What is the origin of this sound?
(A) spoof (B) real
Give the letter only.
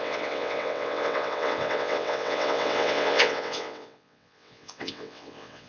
A